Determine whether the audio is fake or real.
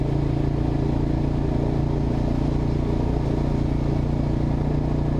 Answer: real